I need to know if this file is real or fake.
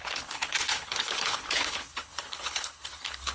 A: fake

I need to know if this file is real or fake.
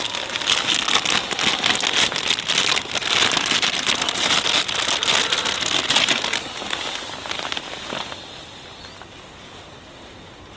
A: real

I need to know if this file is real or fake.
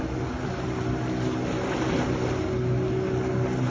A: real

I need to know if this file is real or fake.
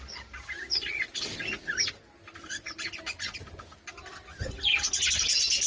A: real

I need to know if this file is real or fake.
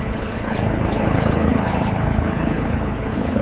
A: fake